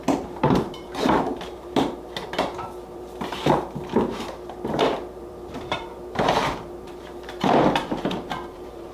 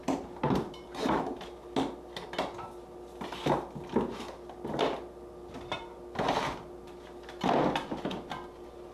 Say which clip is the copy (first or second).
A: first